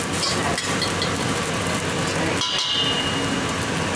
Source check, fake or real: real